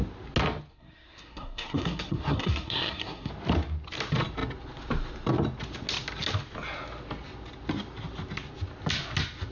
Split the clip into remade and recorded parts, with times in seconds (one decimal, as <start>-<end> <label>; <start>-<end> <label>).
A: 0.0-0.7 recorded; 0.7-3.3 remade; 3.3-9.5 recorded